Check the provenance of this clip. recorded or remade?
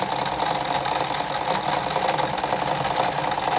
recorded